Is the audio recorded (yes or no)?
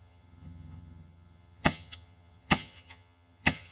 no